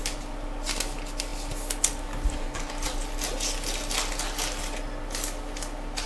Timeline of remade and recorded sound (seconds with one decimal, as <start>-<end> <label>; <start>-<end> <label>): 0.0-6.1 recorded